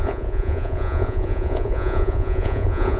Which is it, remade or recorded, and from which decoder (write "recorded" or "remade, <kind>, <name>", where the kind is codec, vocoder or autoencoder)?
remade, vocoder, Vocos